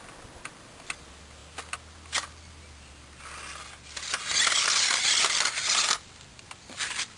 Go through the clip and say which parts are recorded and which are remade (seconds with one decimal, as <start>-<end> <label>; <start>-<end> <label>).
0.0-7.2 recorded